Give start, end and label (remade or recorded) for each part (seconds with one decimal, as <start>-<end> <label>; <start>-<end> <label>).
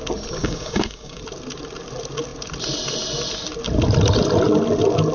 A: 0.0-0.4 recorded; 0.4-1.2 remade; 1.2-5.1 recorded